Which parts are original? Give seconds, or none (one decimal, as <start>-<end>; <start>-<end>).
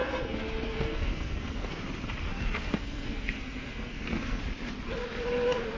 1.8-2.3; 4.4-5.8